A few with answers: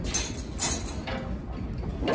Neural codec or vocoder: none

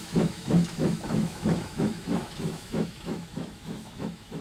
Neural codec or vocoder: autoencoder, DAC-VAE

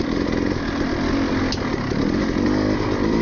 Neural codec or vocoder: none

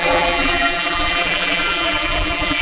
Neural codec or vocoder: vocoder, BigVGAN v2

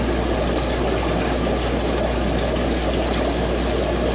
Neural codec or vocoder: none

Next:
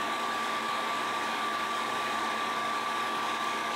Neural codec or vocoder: codec, DAC